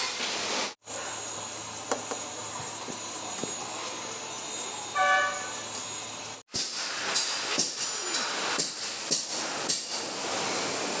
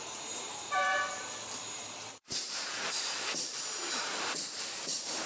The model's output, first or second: second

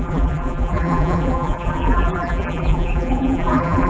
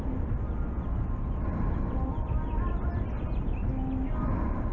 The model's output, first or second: first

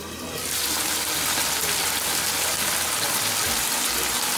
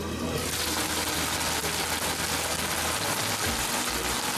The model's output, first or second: first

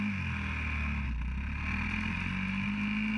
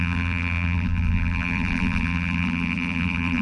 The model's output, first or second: second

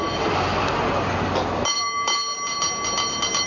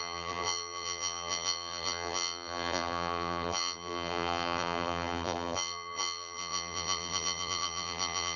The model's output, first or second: second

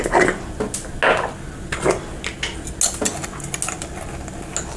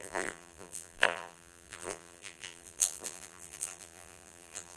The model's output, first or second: second